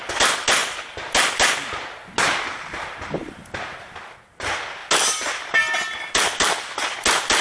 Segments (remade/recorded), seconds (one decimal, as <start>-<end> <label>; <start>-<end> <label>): 0.0-7.4 recorded